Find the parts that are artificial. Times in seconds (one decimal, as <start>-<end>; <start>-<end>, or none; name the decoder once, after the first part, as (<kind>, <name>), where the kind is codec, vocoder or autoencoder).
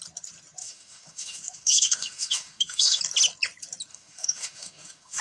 0.6-3.0 (autoencoder, DAC-VAE); 3.9-5.2